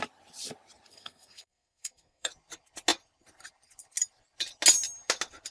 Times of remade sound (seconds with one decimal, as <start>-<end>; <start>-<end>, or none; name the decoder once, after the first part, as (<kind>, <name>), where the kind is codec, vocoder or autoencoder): 0.9-2.3 (codec, SNAC)